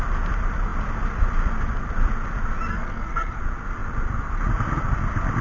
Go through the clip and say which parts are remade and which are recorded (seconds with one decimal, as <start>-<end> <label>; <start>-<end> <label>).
0.0-2.7 recorded; 2.7-3.4 remade; 3.4-5.4 recorded